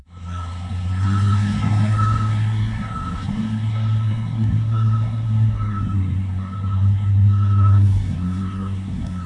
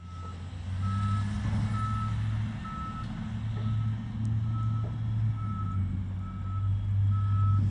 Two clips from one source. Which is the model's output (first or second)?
first